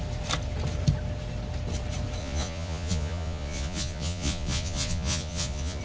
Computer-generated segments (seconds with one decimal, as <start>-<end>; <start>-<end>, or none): 2.2-5.8